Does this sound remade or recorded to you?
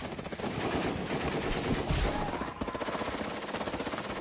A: recorded